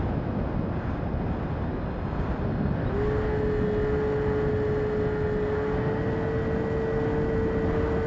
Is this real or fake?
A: real